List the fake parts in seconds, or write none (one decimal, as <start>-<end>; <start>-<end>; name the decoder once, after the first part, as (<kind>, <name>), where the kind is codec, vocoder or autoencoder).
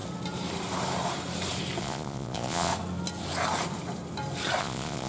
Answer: 1.8-2.7 (vocoder, Vocos); 4.6-5.1